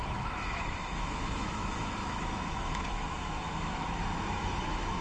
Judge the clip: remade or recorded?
remade